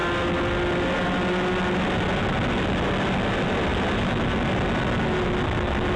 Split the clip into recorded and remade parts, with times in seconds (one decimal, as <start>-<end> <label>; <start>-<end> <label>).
0.0-6.0 recorded